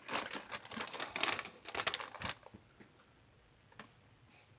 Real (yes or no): yes